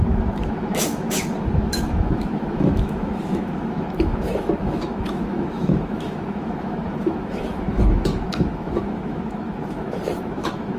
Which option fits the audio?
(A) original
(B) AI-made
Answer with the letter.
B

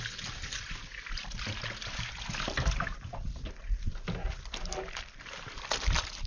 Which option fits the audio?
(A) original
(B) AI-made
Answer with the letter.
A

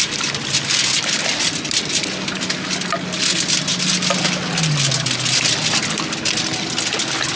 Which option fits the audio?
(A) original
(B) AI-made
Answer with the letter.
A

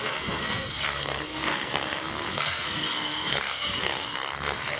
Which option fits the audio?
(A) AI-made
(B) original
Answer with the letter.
A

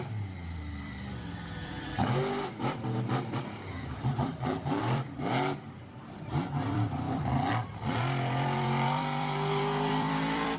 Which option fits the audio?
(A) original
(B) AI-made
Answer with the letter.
B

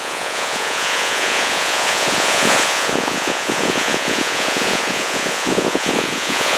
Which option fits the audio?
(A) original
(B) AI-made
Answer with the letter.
B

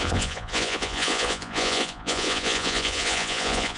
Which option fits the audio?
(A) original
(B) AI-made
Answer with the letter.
B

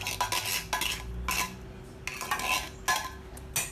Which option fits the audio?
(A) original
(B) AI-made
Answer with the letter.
A